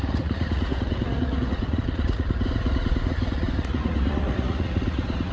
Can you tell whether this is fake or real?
fake